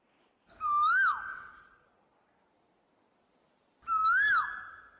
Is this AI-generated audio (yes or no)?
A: no